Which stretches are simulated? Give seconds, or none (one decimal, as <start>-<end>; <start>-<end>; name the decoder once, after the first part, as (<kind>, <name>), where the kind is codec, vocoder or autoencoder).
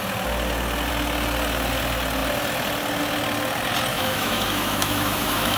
3.9-5.6 (autoencoder, DAC-VAE)